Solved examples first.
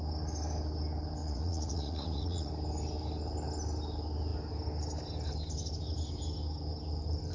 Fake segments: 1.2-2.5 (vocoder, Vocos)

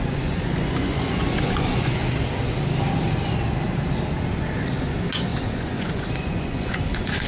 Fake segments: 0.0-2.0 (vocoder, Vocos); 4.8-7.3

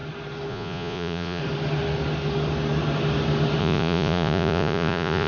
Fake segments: 0.5-1.4 (vocoder, Vocos); 3.6-5.3

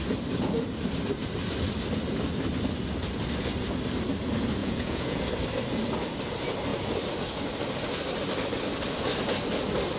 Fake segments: 4.6-5.2 (vocoder, Vocos)

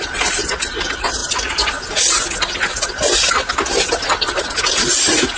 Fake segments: none

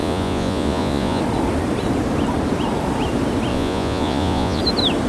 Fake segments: 0.0-1.2 (vocoder, Vocos); 3.5-4.6

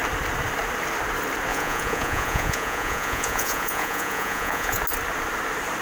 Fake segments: 1.5-4.8 (vocoder, Vocos)

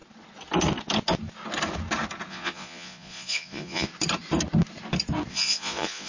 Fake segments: 2.3-3.9 (vocoder, Vocos); 5.3-6.1